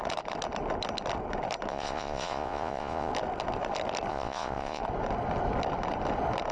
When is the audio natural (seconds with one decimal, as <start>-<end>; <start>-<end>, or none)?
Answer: 0.0-1.7; 3.1-4.1; 4.8-6.5